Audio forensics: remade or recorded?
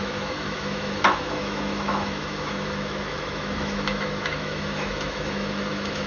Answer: remade